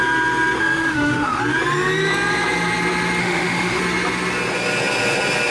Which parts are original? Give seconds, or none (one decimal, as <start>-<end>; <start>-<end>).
0.0-0.6; 1.4-3.2; 3.8-5.5